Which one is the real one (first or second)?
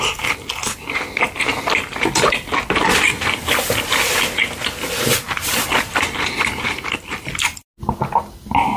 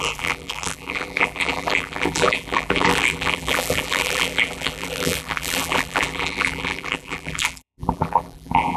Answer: first